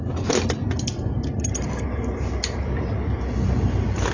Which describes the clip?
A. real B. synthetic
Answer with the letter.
A